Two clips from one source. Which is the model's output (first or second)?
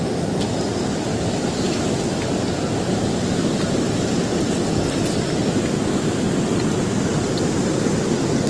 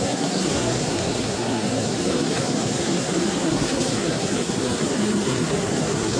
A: second